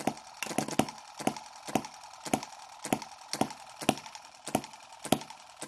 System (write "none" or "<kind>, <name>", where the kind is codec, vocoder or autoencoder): none